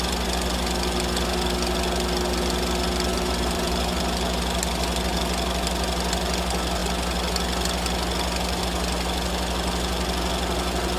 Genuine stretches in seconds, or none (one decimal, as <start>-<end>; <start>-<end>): 0.0-3.1; 4.0-11.0